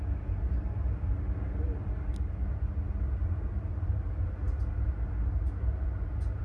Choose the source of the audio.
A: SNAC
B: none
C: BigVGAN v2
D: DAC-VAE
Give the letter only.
B